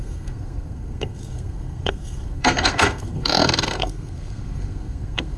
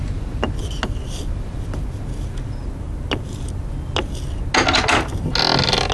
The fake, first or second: first